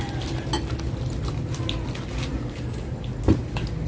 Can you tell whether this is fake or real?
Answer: real